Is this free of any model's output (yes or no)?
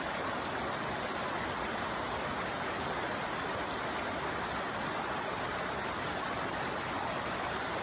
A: yes